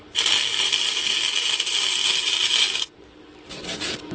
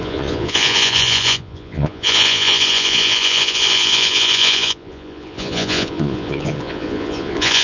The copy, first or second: second